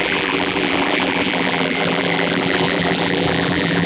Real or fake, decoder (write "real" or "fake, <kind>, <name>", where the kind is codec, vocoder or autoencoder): fake, vocoder, BigVGAN v2